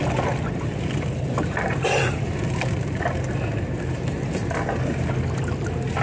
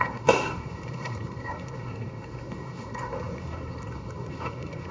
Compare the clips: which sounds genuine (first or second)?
first